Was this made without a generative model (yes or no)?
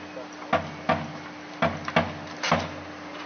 yes